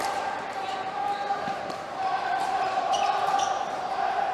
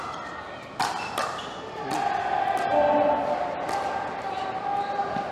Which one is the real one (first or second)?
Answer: second